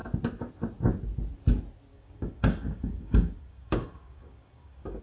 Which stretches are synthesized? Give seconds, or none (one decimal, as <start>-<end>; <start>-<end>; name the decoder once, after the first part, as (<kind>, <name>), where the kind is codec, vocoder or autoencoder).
1.9-5.0 (codec, DAC)